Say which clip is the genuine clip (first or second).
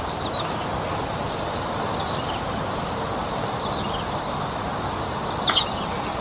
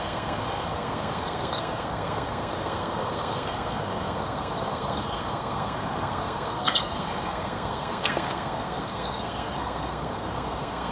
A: first